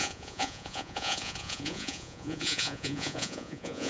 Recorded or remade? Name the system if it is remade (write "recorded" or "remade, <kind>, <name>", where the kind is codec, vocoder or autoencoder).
remade, vocoder, Vocos